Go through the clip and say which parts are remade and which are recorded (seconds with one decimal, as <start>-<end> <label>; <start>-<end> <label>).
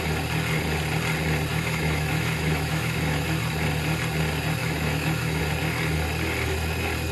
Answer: 0.0-1.5 recorded; 1.5-3.4 remade; 3.4-4.6 recorded; 4.6-5.4 remade; 5.4-7.1 recorded